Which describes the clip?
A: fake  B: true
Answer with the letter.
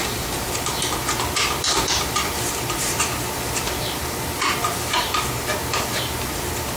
A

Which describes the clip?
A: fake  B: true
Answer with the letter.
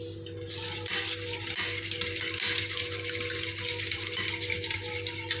B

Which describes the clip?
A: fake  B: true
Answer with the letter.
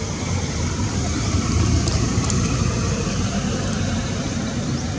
A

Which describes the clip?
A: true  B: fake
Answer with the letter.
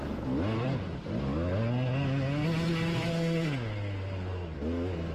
A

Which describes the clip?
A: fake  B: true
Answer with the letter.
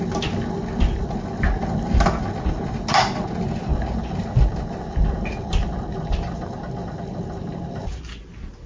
B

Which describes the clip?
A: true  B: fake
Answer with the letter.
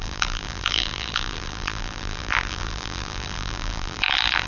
B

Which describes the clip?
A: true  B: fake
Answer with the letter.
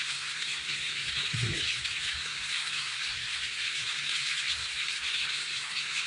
B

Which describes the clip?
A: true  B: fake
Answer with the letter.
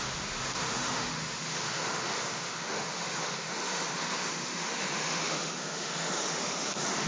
B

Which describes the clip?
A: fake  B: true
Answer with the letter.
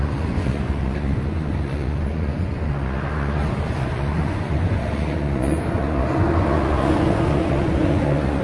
A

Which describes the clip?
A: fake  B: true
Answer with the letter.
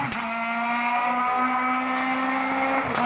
B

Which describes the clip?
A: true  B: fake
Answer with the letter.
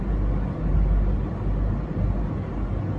A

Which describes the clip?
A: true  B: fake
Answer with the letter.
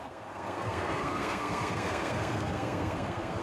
B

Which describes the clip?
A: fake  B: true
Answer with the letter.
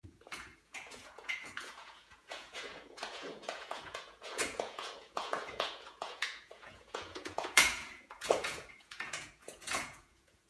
A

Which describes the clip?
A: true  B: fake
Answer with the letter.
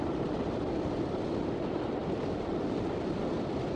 A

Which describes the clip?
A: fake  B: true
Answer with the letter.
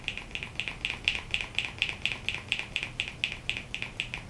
B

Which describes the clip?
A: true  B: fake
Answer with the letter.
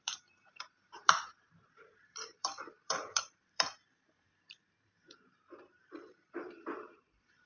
B